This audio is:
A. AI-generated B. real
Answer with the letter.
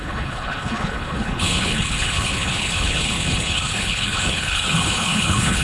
A